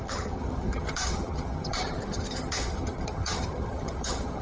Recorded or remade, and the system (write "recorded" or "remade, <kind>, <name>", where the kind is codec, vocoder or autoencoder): remade, vocoder, HiFi-GAN